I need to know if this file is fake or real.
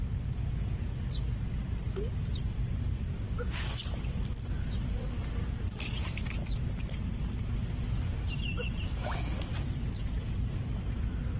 real